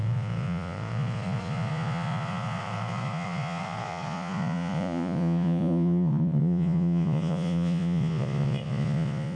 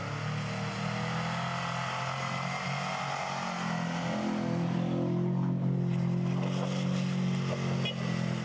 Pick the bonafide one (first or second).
second